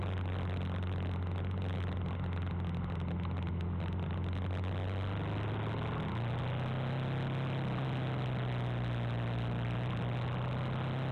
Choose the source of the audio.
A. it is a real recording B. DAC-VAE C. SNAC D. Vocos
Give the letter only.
A